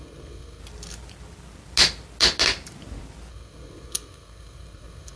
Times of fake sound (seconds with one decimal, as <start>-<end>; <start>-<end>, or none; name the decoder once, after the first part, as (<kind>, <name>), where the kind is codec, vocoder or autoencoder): 0.0-0.6 (codec, SNAC); 3.3-5.2